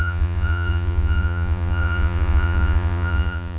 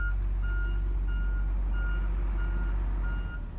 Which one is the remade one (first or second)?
first